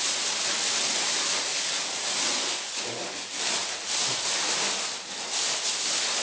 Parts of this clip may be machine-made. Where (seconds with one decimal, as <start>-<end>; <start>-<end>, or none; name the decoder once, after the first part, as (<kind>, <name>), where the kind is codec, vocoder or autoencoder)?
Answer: 2.3-3.0 (vocoder, Vocos)